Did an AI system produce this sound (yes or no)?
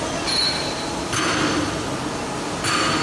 no